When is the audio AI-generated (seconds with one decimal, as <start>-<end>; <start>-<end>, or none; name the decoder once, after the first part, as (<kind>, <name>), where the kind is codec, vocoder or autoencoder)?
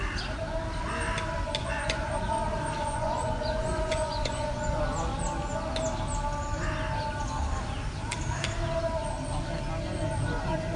1.6-2.1 (vocoder, Vocos); 2.8-4.8